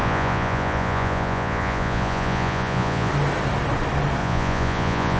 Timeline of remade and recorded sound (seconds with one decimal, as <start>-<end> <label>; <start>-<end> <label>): 0.0-3.1 remade; 3.1-4.2 recorded; 4.2-5.2 remade